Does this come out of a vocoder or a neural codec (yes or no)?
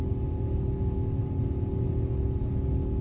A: no